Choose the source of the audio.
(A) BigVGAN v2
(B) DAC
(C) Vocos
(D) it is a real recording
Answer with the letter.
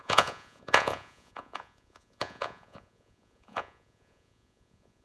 C